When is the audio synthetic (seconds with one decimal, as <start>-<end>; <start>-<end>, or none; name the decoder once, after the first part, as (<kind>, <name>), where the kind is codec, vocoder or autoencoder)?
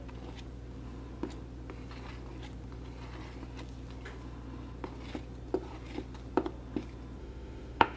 7.2-8.0 (autoencoder, DAC-VAE)